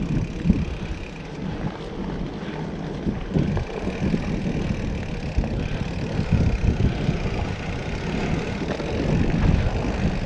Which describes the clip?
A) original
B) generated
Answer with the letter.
A